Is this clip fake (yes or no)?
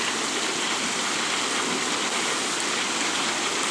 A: yes